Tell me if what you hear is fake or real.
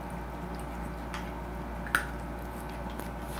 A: real